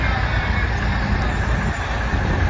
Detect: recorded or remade recorded